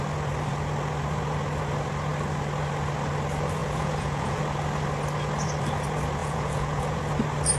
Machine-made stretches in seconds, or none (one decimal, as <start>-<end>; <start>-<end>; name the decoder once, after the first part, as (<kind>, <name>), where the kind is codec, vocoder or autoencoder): 3.6-4.4 (vocoder, Vocos); 6.2-7.0